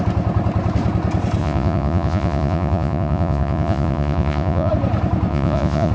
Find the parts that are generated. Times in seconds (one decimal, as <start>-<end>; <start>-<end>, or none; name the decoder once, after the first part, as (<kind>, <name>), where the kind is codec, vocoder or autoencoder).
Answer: 1.4-4.7 (vocoder, Vocos); 5.3-5.9